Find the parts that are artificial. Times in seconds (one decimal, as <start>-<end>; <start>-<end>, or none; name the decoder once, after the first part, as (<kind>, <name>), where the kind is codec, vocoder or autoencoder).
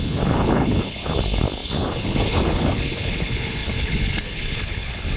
0.0-5.2 (codec, HILCodec)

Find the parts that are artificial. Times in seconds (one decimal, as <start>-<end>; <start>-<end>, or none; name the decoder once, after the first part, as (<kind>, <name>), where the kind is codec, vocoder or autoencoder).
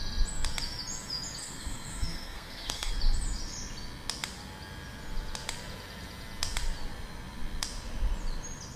1.4-2.9 (codec, SNAC)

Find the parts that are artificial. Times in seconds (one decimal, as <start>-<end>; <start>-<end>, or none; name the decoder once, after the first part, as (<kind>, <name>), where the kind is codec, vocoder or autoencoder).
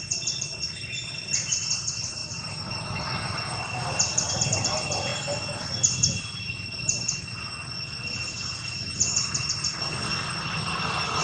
none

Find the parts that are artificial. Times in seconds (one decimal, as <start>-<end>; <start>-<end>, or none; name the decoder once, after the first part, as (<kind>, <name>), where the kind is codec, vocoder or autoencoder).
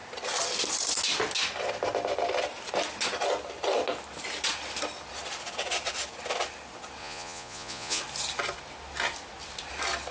7.0-8.0 (vocoder, Vocos)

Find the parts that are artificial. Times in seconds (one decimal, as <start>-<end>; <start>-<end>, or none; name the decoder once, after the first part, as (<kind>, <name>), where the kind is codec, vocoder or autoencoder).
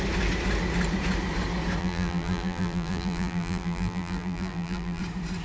1.8-5.0 (vocoder, BigVGAN v2)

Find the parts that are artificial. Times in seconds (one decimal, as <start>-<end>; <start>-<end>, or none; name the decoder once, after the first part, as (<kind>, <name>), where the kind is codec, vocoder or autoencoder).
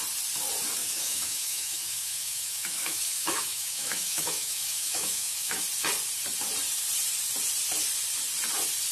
0.8-5.6 (autoencoder, DAC-VAE)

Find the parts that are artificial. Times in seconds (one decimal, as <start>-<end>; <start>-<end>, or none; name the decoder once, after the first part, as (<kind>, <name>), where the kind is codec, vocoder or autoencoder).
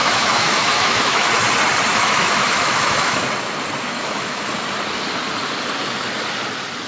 0.0-1.3 (autoencoder, DAC-VAE); 1.9-3.2; 3.9-4.4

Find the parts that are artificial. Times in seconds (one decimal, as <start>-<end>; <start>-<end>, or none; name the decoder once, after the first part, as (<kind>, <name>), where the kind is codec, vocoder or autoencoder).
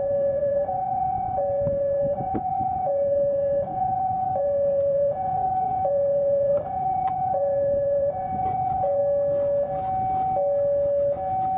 0.0-9.0 (vocoder, Vocos)